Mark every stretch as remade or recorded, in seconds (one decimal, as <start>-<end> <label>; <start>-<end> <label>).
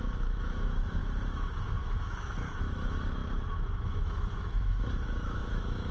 0.0-5.9 remade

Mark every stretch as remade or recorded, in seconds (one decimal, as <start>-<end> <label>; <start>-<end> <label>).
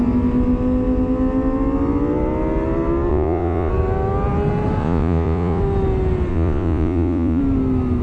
0.0-3.1 recorded; 3.1-3.7 remade; 3.7-4.8 recorded; 4.8-5.6 remade; 5.6-6.3 recorded; 6.3-7.4 remade; 7.4-8.0 recorded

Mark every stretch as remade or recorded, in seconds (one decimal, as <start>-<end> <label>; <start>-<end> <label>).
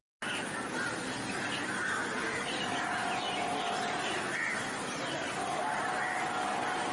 0.0-6.9 recorded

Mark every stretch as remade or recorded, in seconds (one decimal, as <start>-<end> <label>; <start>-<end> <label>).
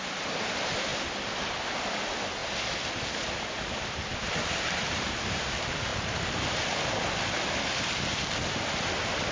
0.0-0.9 remade; 0.9-1.7 recorded; 1.7-2.4 remade; 2.4-3.0 recorded; 3.0-9.3 remade